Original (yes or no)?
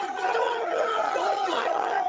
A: no